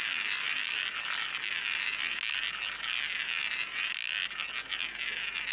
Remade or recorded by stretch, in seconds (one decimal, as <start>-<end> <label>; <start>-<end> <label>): 0.0-5.5 recorded

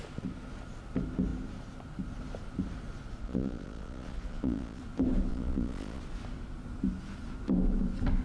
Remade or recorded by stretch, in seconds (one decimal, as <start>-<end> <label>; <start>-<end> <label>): 0.0-3.2 recorded; 3.2-4.8 remade; 4.8-5.3 recorded; 5.3-6.0 remade; 6.0-8.2 recorded